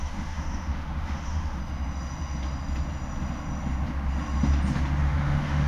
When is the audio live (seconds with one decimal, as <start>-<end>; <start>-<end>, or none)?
1.6-5.0